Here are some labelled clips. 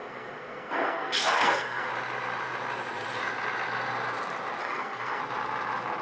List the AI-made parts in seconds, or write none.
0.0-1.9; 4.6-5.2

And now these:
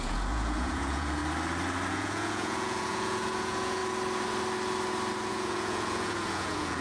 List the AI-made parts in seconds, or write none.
0.0-1.2; 1.9-3.8; 5.3-6.8

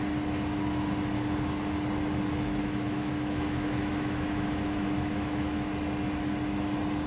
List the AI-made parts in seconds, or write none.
2.6-5.7

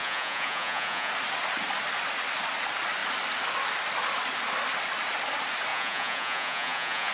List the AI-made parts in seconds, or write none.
0.0-1.1; 5.7-7.1

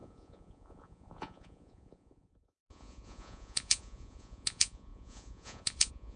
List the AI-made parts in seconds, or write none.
0.0-6.2

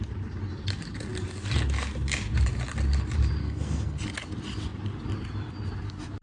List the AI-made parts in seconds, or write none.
3.4-4.0